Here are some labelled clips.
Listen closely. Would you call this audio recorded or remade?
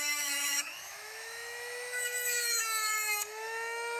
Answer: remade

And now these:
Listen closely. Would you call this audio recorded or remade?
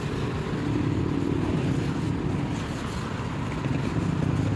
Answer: recorded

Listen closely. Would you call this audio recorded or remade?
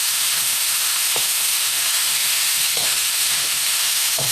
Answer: remade